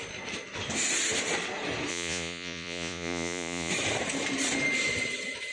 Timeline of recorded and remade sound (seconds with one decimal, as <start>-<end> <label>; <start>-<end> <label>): 0.0-1.9 recorded; 1.9-3.7 remade; 3.7-5.5 recorded